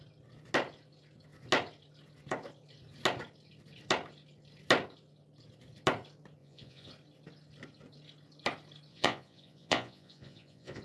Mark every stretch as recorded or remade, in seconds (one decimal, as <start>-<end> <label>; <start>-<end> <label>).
0.0-6.4 recorded; 6.4-6.9 remade; 6.9-8.9 recorded; 8.9-10.8 remade